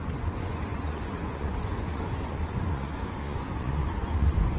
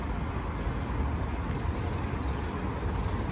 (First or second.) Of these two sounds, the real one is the second